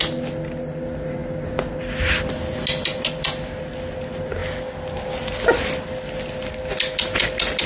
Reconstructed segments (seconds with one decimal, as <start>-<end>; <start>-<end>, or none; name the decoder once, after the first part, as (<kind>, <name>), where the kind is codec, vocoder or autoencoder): none